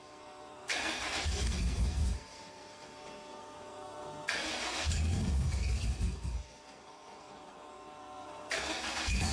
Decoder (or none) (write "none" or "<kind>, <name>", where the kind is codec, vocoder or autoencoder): codec, SNAC